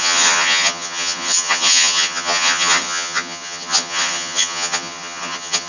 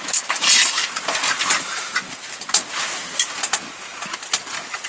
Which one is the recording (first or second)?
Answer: second